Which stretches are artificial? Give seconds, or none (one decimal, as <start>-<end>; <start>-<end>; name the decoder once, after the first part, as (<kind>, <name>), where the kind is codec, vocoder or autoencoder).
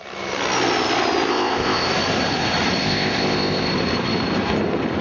1.3-1.9 (codec, ZipCodec); 2.8-3.7